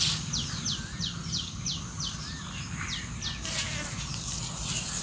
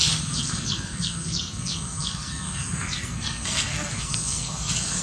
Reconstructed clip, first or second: second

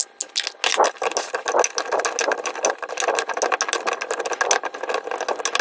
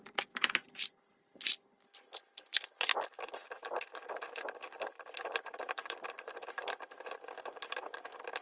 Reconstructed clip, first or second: second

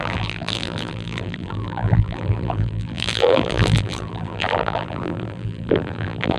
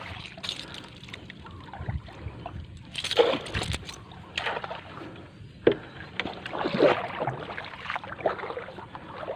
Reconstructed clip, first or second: first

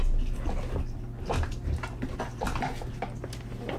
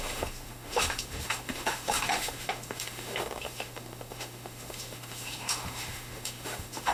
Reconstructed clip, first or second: second